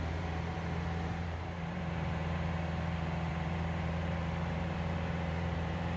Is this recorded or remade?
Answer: remade